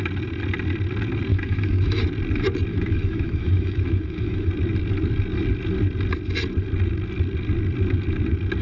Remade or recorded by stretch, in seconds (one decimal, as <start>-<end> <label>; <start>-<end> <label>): 0.0-1.3 recorded; 1.3-2.0 remade; 2.0-2.7 recorded; 2.7-4.5 remade; 4.5-8.6 recorded